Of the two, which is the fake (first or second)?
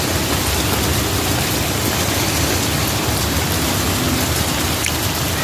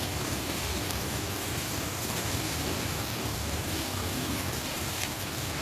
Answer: second